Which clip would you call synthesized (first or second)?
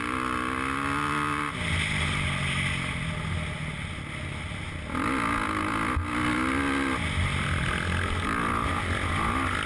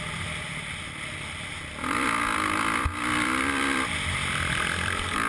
second